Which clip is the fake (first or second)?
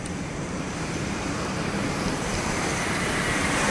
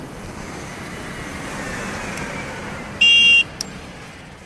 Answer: first